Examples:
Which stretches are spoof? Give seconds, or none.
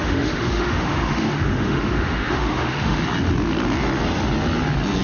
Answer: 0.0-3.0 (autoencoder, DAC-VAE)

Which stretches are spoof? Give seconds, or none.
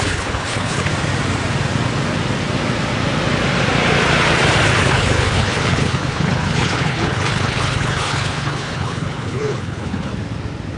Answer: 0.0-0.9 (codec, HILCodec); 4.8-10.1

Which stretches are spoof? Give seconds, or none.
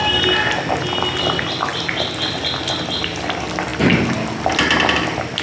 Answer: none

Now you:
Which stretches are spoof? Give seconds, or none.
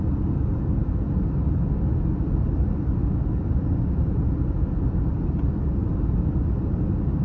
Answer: none